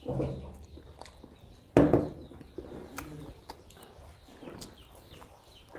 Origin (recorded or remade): recorded